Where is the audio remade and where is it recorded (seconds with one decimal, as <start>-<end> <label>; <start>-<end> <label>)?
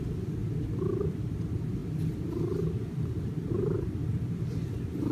0.0-0.4 recorded; 0.4-1.4 remade; 1.4-5.1 recorded